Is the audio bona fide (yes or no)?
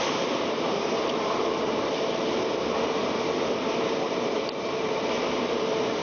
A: no